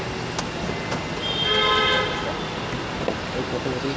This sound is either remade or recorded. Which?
recorded